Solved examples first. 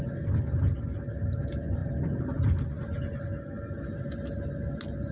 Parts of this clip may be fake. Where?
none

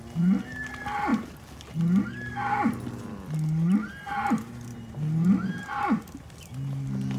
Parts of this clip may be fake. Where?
none

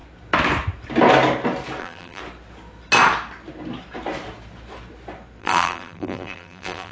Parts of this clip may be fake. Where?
1.8-2.2 (vocoder, BigVGAN v2); 5.4-6.9

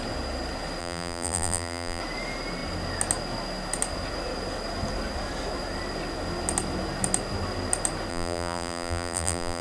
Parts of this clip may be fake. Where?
0.8-2.0 (vocoder, BigVGAN v2); 8.1-9.6

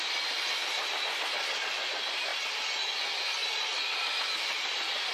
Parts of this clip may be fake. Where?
0.6-1.8 (vocoder, BigVGAN v2); 2.3-2.9; 3.4-5.1

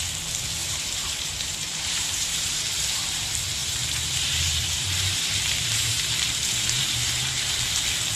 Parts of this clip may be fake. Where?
0.6-2.6 (vocoder, BigVGAN v2); 3.6-7.5

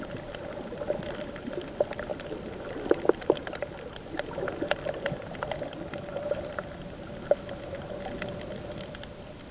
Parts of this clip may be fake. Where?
2.1-6.5 (vocoder, BigVGAN v2)